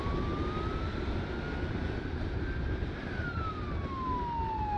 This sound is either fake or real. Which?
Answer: real